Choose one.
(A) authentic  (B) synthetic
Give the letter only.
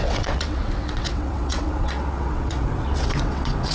B